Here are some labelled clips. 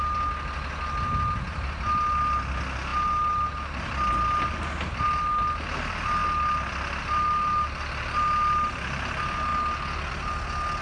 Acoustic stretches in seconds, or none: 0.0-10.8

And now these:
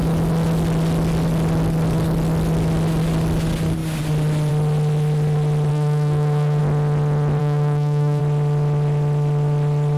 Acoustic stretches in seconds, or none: 0.0-5.7; 6.6-7.4; 8.2-10.0

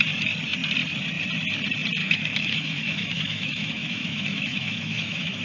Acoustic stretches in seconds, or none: 0.0-2.0

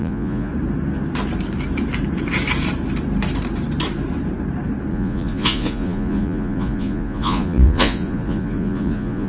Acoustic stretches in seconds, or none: 0.5-4.9

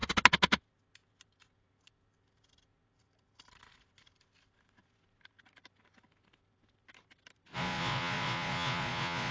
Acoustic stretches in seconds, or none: 0.0-7.5

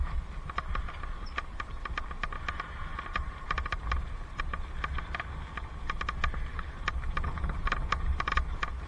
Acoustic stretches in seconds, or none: 0.0-2.9; 4.4-6.5; 8.3-8.9

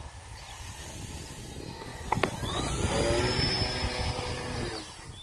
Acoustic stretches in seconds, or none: 0.0-1.9; 2.9-5.2

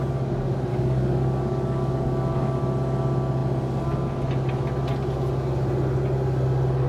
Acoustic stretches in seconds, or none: 0.0-0.7; 2.6-6.9